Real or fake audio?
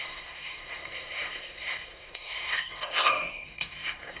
fake